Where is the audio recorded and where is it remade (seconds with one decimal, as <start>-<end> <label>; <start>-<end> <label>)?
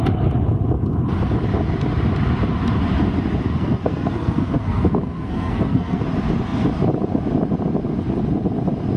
0.0-3.5 recorded; 3.5-6.0 remade; 6.0-9.0 recorded